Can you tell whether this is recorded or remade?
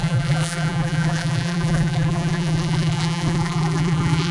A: remade